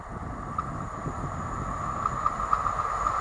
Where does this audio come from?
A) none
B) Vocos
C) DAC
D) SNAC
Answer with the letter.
A